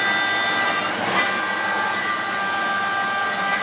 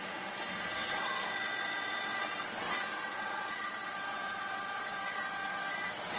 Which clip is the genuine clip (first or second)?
first